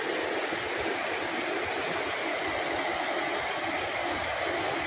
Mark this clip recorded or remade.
recorded